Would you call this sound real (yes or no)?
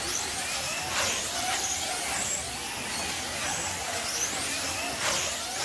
yes